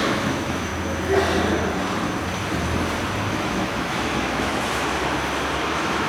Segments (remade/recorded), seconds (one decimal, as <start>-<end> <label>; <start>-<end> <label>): 0.0-0.7 remade; 0.7-3.3 recorded; 3.3-4.5 remade; 4.5-5.6 recorded; 5.6-6.1 remade